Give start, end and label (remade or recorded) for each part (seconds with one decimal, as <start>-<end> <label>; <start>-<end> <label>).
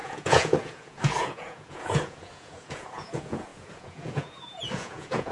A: 0.0-5.3 remade